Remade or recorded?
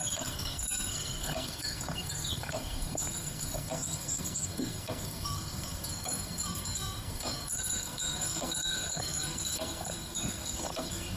remade